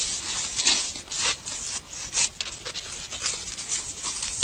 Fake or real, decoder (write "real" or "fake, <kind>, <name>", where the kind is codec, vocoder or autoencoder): real